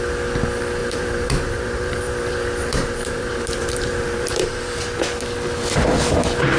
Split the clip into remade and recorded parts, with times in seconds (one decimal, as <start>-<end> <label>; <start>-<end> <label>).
0.0-0.8 recorded; 0.8-4.8 remade; 4.8-6.6 recorded